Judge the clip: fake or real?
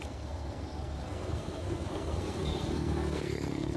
fake